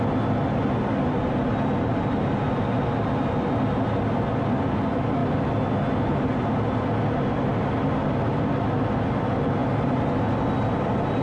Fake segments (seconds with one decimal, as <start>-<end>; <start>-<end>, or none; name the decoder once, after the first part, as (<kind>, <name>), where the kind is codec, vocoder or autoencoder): 9.6-10.2 (vocoder, BigVGAN v2)